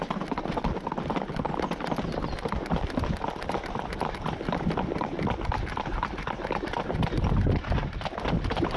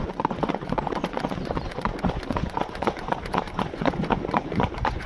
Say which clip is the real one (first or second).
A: first